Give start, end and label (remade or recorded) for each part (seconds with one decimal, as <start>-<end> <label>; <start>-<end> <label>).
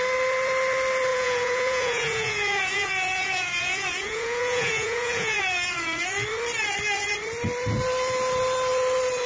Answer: 0.0-1.1 recorded; 1.1-5.4 remade; 5.4-9.3 recorded